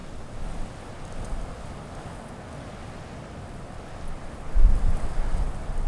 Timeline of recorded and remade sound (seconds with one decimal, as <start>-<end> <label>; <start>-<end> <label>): 0.0-5.9 recorded